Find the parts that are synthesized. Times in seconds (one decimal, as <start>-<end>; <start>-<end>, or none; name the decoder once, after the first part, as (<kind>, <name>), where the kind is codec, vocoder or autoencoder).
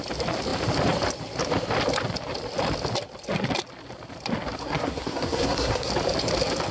4.6-5.9 (codec, SNAC)